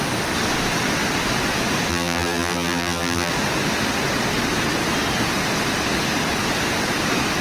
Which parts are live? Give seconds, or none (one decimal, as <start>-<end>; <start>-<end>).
0.0-1.9; 3.3-7.4